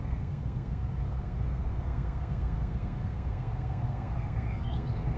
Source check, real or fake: fake